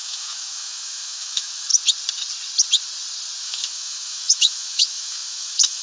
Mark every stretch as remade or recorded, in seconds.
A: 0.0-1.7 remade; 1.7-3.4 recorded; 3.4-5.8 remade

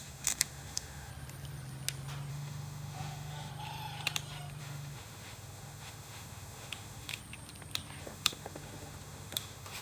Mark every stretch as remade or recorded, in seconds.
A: 0.0-1.1 remade; 1.1-2.3 recorded; 2.3-3.5 remade; 3.5-4.6 recorded; 4.6-7.2 remade; 7.2-8.0 recorded; 8.0-9.8 remade